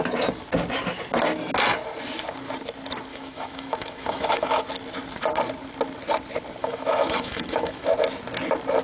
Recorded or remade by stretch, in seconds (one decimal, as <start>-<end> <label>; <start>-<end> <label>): 0.0-3.1 recorded; 3.1-4.6 remade; 4.6-6.6 recorded; 6.6-7.9 remade; 7.9-8.8 recorded